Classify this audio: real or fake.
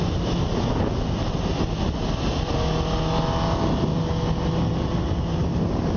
real